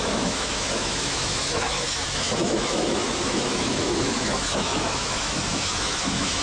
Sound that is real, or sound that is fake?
fake